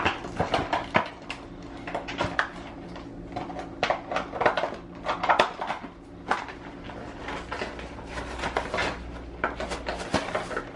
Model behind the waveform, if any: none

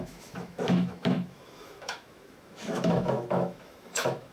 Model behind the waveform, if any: autoencoder, DAC-VAE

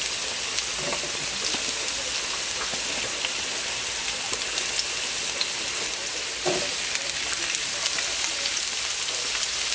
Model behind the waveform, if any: none